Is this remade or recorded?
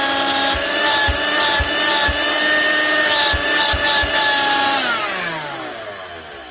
recorded